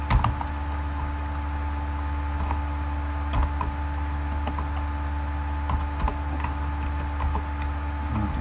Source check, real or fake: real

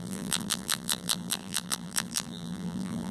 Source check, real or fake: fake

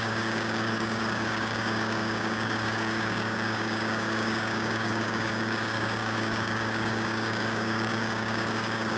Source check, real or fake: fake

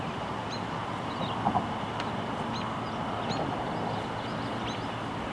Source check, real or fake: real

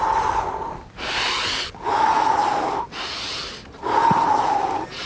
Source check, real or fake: real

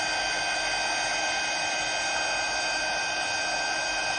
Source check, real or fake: real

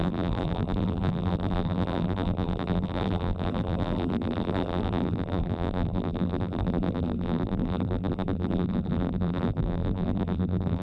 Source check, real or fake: fake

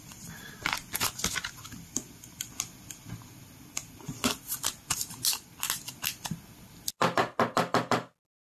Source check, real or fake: real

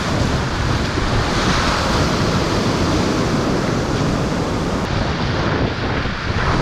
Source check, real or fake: real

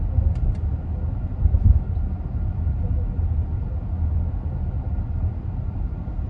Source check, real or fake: real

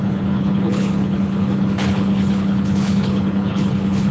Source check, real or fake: fake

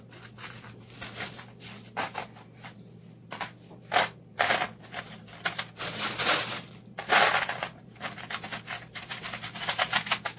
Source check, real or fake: real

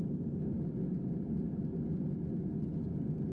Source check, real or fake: real